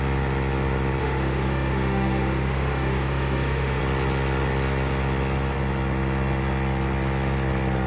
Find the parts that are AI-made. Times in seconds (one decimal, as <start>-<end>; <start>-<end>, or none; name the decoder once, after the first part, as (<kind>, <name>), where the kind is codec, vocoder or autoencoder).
1.0-3.8 (autoencoder, DAC-VAE)